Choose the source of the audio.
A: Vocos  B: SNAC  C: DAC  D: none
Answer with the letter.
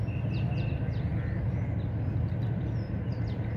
D